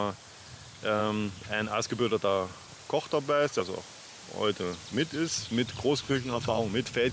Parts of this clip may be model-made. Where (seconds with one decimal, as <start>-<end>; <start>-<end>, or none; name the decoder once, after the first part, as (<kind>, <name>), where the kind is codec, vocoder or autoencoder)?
6.0-6.6 (codec, SNAC)